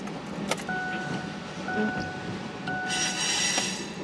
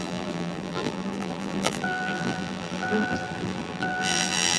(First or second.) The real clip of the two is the first